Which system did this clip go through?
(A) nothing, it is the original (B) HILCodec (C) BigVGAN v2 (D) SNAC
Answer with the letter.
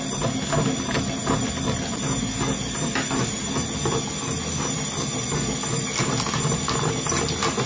A